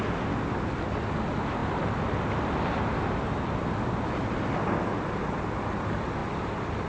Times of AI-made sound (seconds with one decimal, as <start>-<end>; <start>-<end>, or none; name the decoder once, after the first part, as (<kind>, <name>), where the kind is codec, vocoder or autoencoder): none